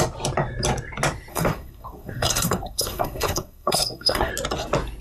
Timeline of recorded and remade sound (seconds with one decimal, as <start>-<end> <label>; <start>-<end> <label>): 0.0-1.3 recorded; 1.3-4.3 remade; 4.3-5.0 recorded